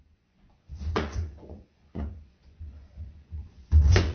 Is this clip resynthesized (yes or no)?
yes